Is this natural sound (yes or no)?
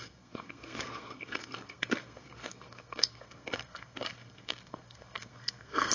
no